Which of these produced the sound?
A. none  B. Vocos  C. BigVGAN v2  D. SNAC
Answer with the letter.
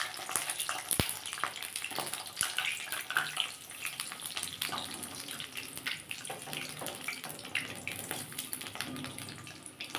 A